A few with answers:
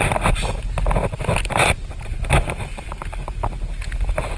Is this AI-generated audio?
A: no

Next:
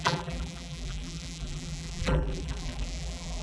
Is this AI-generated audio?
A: yes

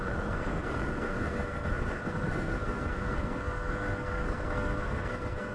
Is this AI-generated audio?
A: yes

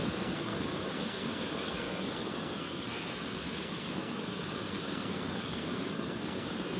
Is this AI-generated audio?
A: yes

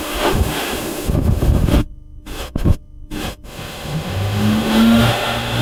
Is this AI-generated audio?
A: yes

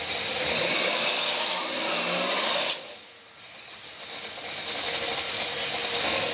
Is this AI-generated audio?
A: no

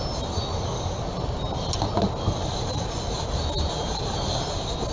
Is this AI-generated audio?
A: no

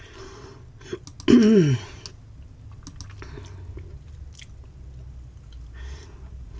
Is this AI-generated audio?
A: no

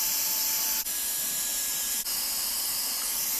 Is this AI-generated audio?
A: no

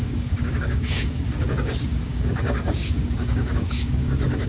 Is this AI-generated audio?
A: yes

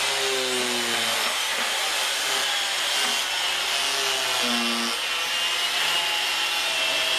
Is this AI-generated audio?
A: no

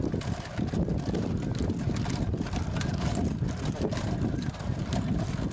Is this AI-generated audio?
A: no